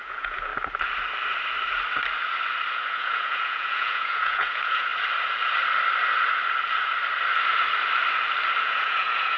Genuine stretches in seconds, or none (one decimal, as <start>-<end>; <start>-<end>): 0.5-2.7; 4.9-8.6